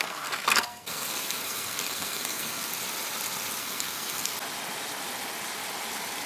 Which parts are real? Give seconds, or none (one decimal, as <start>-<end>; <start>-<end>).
2.7-3.6; 4.3-6.3